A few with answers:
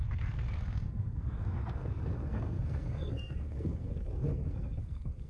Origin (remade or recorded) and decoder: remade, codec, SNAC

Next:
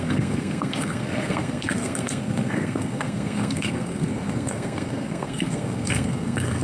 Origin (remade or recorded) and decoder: remade, codec, SNAC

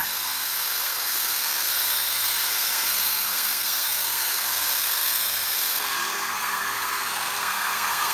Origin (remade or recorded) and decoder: remade, codec, SNAC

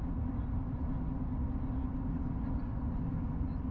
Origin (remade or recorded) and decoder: recorded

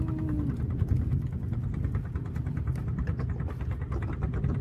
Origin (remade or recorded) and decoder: recorded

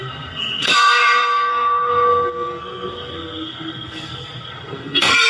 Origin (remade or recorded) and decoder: remade, codec, SNAC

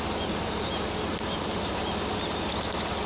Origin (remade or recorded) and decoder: recorded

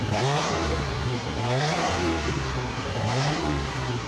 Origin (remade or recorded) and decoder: remade, codec, SNAC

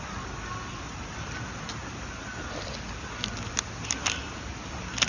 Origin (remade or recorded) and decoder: recorded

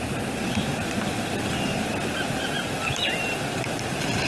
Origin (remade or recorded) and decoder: recorded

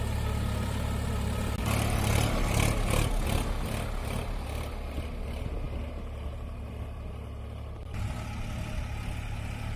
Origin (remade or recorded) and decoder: recorded